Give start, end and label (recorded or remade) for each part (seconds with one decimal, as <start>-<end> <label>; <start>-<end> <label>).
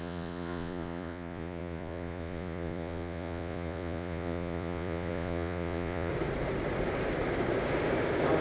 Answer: 0.0-6.1 remade; 6.1-8.4 recorded